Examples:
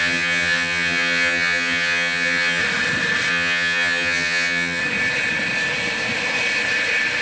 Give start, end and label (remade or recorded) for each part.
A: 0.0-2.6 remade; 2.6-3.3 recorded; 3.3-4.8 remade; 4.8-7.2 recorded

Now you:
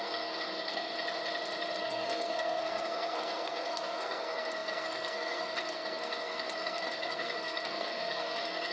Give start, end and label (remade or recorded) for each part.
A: 0.0-0.9 remade; 0.9-1.8 recorded; 1.8-8.7 remade

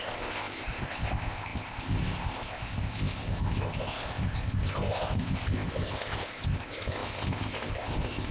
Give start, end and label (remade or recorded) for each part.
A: 0.0-8.3 remade

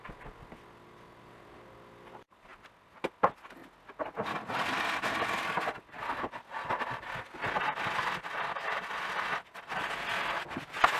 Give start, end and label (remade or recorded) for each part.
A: 0.0-11.0 recorded